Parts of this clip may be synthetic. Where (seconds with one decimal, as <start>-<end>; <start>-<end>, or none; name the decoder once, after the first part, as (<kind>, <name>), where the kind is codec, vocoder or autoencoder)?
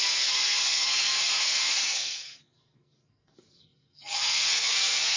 0.0-5.2 (codec, SNAC)